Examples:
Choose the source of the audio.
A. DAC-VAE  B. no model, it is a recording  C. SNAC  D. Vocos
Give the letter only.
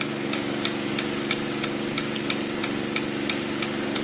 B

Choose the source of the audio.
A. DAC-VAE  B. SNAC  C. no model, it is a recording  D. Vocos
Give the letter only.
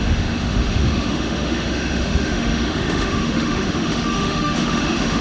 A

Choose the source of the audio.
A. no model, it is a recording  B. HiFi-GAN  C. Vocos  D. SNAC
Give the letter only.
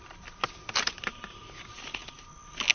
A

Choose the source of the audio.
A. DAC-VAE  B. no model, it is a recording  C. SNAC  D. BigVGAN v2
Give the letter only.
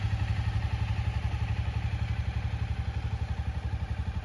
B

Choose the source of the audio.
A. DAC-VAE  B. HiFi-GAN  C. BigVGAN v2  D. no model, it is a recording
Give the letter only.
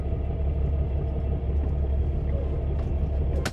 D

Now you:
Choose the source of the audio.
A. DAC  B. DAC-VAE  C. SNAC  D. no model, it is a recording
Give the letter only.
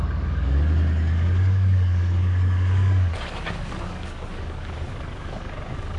A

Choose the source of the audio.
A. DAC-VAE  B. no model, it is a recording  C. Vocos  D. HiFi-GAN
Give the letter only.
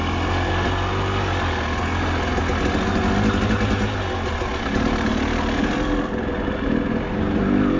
B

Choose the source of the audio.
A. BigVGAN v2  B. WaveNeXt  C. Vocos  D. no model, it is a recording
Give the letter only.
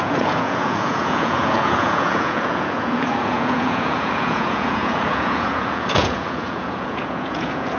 C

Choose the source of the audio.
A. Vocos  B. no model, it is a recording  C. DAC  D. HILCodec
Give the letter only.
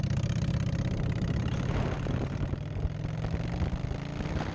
B